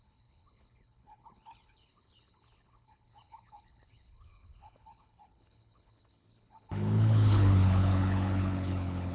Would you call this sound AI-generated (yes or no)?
yes